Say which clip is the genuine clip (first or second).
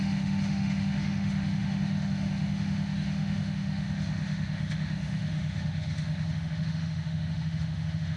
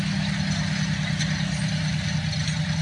second